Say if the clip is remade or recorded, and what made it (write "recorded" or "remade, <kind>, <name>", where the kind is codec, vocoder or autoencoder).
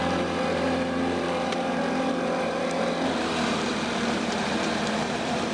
remade, vocoder, BigVGAN v2